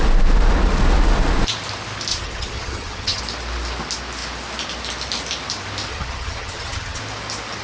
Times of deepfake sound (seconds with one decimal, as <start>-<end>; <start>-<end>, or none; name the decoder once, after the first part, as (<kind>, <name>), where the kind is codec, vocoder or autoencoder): 2.1-3.2 (vocoder, HiFi-GAN); 5.9-7.0

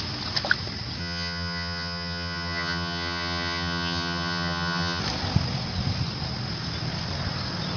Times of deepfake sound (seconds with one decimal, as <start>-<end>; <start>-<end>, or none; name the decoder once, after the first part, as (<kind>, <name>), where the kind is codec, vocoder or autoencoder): 1.0-5.0 (vocoder, HiFi-GAN)